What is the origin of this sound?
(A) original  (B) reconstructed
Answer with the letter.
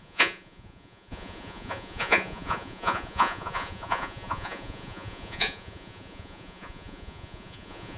B